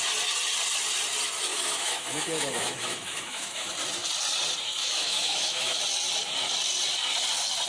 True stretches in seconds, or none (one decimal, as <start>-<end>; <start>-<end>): 0.0-1.5; 3.7-4.8; 5.8-7.7